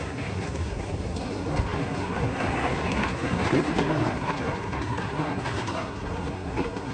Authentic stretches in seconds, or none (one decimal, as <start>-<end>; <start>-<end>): none